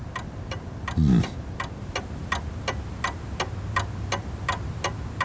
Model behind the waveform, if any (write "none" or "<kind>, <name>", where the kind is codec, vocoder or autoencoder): none